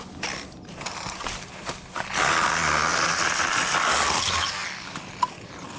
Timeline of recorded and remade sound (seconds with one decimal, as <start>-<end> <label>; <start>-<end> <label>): 0.0-5.8 recorded